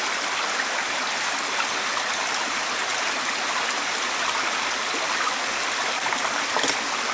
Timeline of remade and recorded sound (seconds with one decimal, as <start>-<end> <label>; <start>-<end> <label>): 0.0-7.1 recorded